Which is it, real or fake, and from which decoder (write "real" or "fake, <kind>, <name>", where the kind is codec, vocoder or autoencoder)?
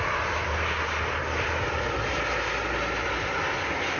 real